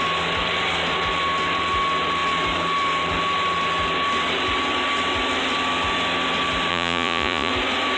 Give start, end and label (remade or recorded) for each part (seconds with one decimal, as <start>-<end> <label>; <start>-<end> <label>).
0.0-6.7 recorded; 6.7-7.5 remade; 7.5-8.0 recorded